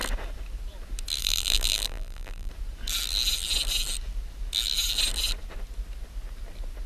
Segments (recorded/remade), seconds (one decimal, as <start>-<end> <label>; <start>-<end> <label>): 0.0-1.2 recorded; 1.2-2.5 remade; 2.5-6.9 recorded